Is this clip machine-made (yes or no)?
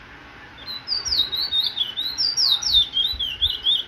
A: no